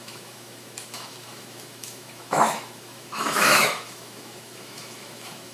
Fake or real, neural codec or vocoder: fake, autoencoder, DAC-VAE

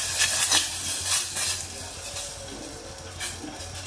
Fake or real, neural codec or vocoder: real